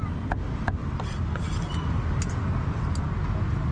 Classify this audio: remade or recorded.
recorded